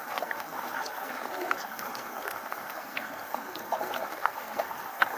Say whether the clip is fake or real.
fake